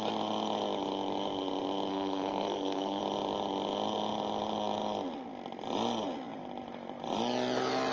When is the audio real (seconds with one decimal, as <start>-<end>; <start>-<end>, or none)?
0.0-1.9; 3.0-7.9